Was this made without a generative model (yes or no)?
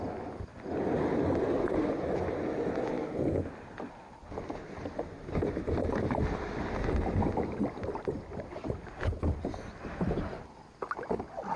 yes